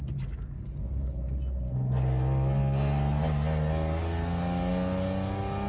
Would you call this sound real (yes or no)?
yes